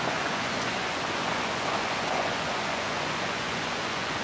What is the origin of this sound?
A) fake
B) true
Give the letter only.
A